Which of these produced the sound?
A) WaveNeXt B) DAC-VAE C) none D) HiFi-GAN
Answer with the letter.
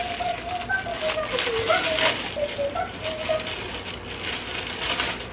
C